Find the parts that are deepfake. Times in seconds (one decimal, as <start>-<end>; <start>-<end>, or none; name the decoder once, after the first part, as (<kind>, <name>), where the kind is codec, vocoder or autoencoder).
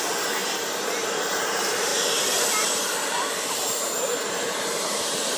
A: 0.0-1.9 (vocoder, BigVGAN v2); 3.5-5.4